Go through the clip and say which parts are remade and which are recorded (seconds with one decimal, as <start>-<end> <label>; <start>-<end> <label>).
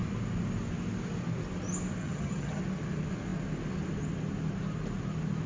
0.0-2.0 recorded; 2.0-2.6 remade; 2.6-5.5 recorded